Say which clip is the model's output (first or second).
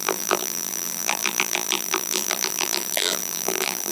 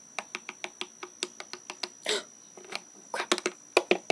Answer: first